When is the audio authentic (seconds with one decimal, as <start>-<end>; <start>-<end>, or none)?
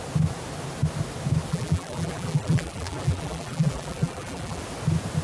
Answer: 0.0-1.5; 4.6-5.2